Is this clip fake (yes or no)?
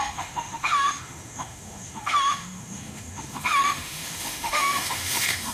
yes